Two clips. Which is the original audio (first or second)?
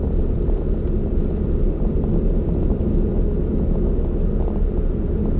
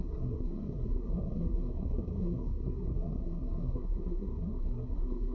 first